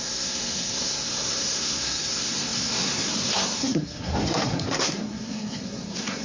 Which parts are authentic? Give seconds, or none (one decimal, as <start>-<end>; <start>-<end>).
none